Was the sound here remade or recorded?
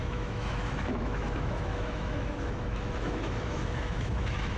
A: remade